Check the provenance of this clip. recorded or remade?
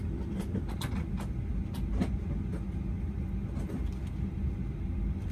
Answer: recorded